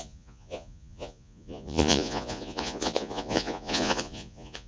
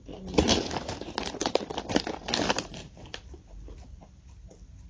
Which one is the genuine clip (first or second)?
second